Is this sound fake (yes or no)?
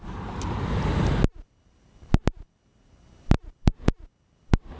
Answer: no